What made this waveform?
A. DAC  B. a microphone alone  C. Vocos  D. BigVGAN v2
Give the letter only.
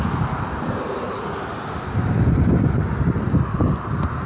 B